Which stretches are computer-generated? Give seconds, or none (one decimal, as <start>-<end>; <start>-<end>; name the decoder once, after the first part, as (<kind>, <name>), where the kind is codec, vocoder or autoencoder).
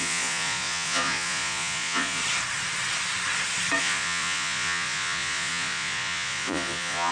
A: 0.0-2.2 (vocoder, Vocos); 3.8-7.1